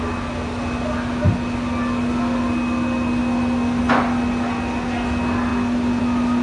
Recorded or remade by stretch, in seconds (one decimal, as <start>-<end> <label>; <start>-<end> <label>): 0.0-6.4 recorded